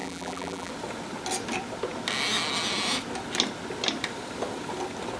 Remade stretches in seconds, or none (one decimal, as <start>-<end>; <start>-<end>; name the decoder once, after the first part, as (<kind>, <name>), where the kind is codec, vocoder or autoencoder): 0.0-0.7 (vocoder, BigVGAN v2)